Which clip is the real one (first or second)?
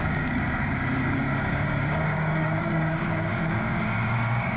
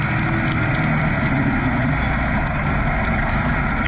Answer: second